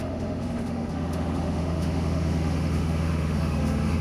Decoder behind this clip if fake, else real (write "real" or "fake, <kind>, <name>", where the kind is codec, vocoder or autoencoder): fake, autoencoder, DAC-VAE